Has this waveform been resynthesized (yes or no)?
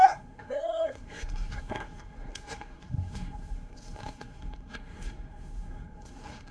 yes